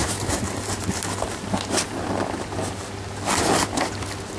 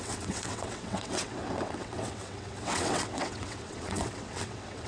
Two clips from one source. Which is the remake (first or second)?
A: second